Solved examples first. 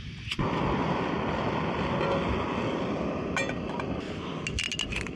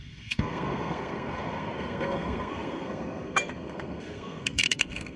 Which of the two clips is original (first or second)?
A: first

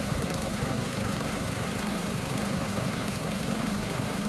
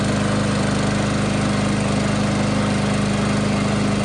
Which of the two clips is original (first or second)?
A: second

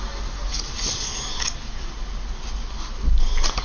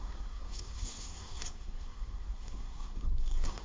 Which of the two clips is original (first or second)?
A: first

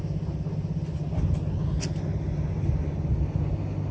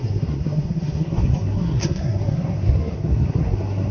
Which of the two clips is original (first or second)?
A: first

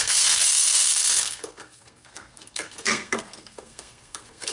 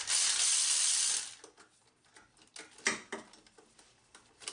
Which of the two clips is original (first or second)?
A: second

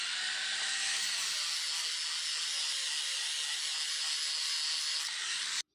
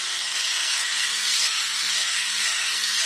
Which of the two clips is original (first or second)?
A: first